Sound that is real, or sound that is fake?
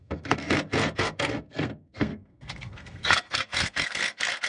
fake